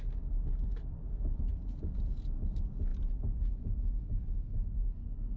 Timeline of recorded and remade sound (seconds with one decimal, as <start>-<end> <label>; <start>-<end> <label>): 0.0-1.5 recorded; 1.5-2.5 remade; 2.5-5.4 recorded